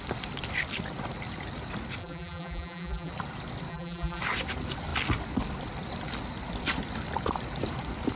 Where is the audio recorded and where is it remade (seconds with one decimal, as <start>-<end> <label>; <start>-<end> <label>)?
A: 0.0-2.0 recorded; 2.0-3.1 remade; 3.1-3.7 recorded; 3.7-4.2 remade; 4.2-8.2 recorded